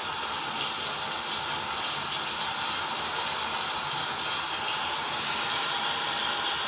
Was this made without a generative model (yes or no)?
yes